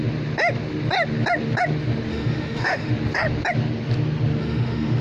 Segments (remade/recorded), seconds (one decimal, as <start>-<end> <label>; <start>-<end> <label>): 0.0-2.1 recorded; 2.1-2.9 remade; 2.9-4.4 recorded; 4.4-5.0 remade